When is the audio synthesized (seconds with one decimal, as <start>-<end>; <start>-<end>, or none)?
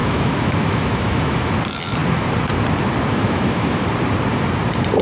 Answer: 0.0-1.5; 3.1-3.9